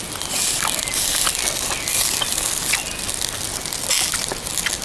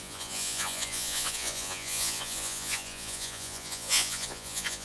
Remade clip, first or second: second